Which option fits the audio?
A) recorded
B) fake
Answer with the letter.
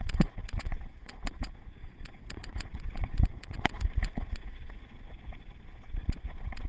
B